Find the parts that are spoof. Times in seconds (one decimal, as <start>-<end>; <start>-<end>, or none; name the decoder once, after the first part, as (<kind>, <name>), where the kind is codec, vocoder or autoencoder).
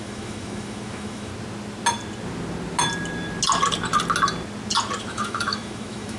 0.0-1.3 (autoencoder, DAC-VAE); 5.0-6.2